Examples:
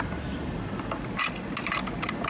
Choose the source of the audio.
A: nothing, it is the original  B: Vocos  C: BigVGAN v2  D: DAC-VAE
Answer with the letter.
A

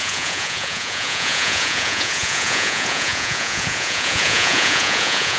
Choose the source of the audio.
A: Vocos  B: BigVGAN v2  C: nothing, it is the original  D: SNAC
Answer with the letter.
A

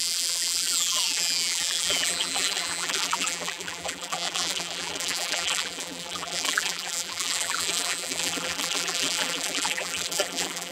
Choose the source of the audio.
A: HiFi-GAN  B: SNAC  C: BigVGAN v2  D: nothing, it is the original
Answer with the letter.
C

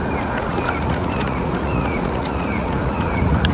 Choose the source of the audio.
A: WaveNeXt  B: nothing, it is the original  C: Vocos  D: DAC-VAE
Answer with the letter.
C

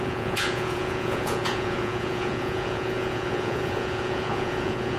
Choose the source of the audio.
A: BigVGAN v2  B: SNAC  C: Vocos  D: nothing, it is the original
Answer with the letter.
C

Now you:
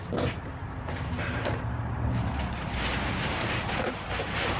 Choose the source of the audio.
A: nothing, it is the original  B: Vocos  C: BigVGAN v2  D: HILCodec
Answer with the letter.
C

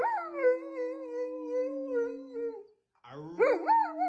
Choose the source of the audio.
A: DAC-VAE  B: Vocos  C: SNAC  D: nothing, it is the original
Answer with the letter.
D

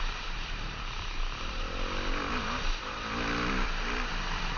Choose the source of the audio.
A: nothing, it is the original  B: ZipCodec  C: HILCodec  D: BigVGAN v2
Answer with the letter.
D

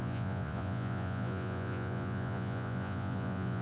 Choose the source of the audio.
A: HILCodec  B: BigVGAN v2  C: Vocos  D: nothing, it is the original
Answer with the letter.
C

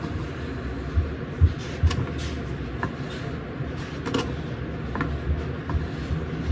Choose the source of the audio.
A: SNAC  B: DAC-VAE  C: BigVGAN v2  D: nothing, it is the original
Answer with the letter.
D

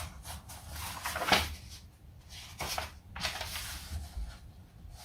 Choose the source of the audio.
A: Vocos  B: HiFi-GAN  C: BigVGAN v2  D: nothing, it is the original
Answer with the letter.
D